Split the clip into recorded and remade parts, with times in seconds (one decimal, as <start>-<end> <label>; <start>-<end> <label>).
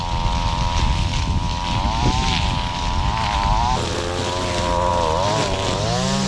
0.0-6.3 recorded